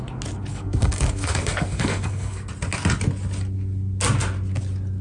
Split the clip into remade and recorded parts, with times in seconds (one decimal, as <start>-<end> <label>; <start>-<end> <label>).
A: 0.0-0.5 recorded; 0.5-2.5 remade; 2.5-5.0 recorded